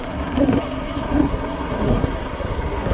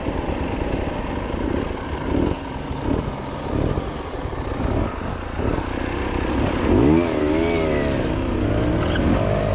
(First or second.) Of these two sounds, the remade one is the first